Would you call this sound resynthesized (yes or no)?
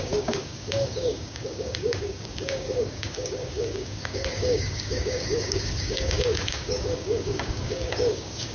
yes